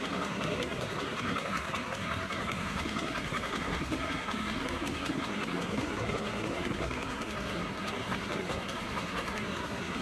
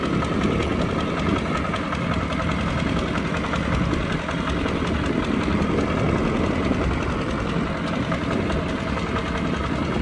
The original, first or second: second